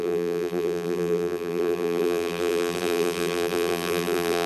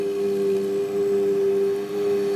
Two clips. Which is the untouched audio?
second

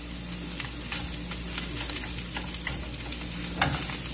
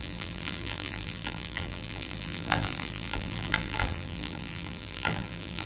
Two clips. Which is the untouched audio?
first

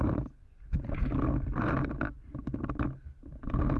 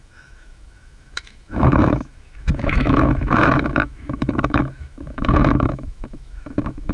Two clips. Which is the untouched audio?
first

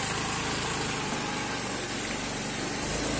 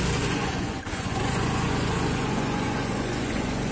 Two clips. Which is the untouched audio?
first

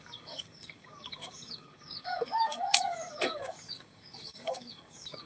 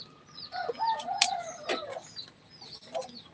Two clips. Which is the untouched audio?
second